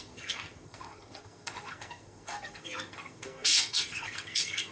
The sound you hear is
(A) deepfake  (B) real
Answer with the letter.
A